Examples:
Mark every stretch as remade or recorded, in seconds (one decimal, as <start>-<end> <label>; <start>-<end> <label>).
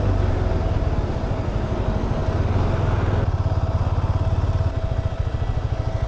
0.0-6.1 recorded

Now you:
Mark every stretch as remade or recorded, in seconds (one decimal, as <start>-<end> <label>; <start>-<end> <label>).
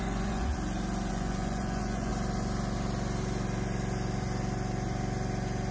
0.0-0.5 remade; 0.5-1.1 recorded; 1.1-2.1 remade; 2.1-5.7 recorded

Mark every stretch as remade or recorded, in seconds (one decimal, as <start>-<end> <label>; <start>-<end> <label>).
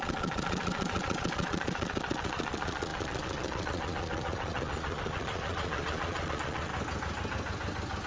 0.0-6.7 remade; 6.7-8.1 recorded